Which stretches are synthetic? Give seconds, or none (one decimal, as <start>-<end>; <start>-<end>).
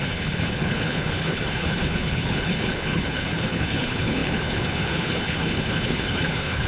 0.0-6.7